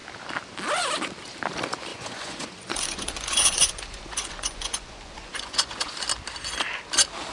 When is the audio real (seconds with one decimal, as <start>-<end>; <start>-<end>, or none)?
0.0-1.9; 5.9-7.3